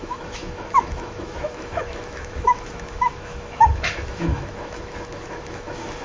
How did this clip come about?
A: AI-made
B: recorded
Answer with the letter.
A